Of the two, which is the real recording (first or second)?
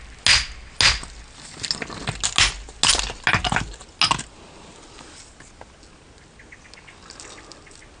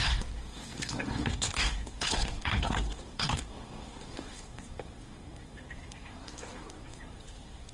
first